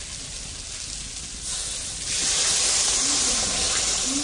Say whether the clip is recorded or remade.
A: recorded